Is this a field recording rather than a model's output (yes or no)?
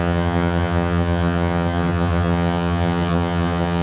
no